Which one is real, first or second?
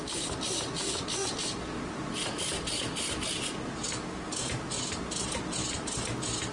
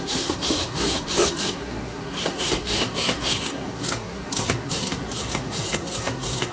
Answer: first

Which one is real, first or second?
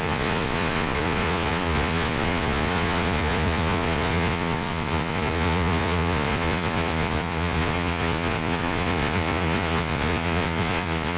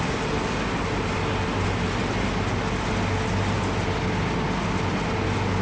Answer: second